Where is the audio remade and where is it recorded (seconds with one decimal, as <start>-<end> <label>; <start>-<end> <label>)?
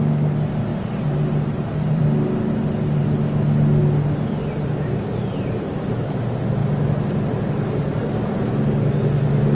0.0-0.7 recorded; 0.7-2.0 remade; 2.0-9.5 recorded